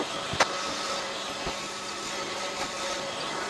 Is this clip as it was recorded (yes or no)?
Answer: yes